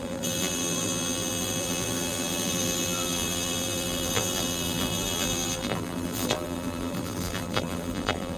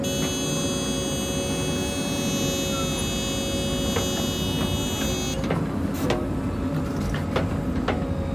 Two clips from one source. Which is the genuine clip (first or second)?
second